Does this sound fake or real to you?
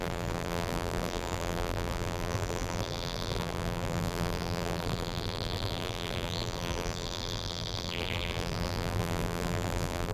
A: fake